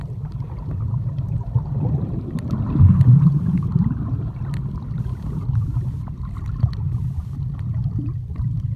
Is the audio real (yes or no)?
no